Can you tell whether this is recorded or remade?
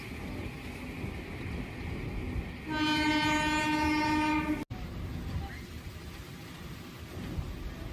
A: recorded